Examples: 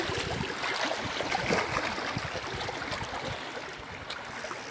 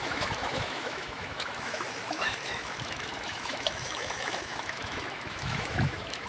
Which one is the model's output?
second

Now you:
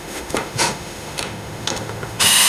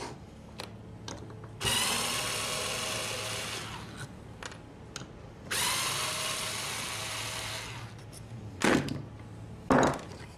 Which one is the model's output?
first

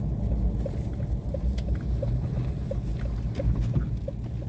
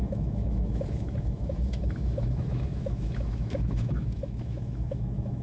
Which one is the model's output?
second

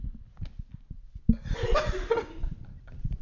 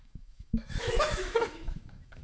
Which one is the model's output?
second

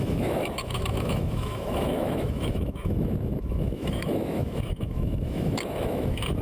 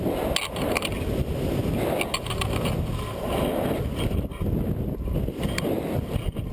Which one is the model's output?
first